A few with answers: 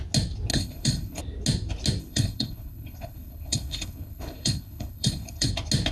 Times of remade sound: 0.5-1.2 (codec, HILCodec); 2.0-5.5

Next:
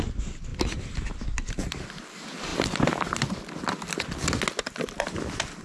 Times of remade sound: none

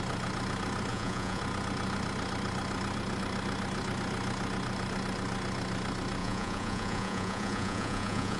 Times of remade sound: 0.9-1.4 (vocoder, Vocos); 6.2-8.4

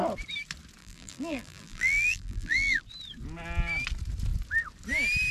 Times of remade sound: 0.8-2.8 (vocoder, BigVGAN v2)

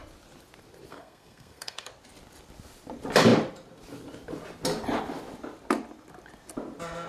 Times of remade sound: 0.9-1.9 (codec, SNAC)